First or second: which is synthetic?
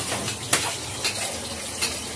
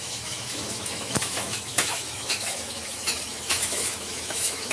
second